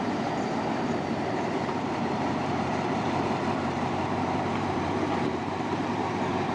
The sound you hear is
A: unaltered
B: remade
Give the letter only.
B